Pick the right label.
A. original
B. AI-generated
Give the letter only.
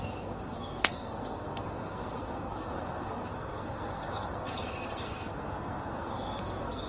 B